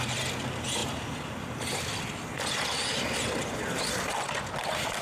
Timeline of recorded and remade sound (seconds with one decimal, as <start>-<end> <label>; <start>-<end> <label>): 0.0-5.0 recorded